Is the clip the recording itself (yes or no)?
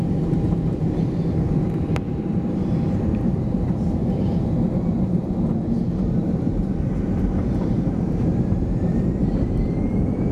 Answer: no